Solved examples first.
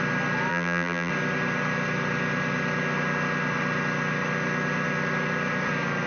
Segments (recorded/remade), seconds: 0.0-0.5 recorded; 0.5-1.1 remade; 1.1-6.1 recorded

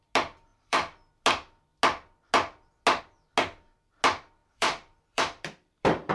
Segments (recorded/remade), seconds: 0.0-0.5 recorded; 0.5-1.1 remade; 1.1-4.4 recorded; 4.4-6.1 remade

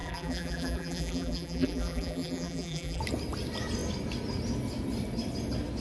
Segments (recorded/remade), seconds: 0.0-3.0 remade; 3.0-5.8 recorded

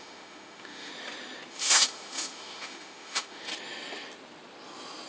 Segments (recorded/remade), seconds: 0.0-0.9 remade; 0.9-1.5 recorded; 1.5-3.5 remade; 3.5-5.1 recorded

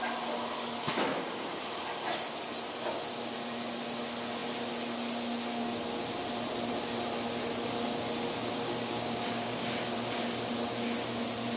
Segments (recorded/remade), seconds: 0.0-1.1 recorded; 1.1-1.6 remade; 1.6-8.5 recorded; 8.5-9.7 remade; 9.7-11.6 recorded